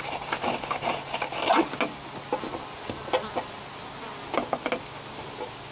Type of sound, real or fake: real